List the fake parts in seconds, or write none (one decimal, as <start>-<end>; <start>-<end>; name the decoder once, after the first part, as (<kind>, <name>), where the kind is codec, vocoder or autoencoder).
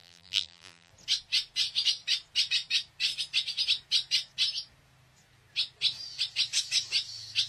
0.0-0.9 (vocoder, BigVGAN v2)